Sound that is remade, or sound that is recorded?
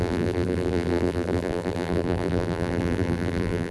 remade